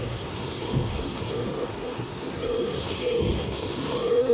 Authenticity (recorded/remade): remade